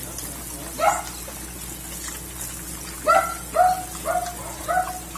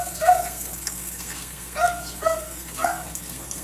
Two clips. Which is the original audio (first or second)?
first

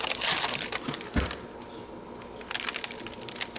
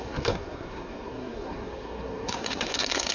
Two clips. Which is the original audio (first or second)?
first